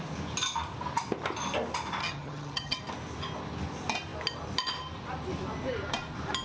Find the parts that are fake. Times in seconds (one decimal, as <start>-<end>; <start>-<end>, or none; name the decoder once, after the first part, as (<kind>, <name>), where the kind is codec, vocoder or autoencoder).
2.0-2.8 (vocoder, HiFi-GAN)